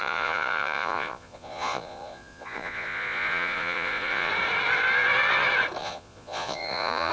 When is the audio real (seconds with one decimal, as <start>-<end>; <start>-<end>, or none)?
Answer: 4.3-5.8